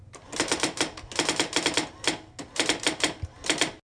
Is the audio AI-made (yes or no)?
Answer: no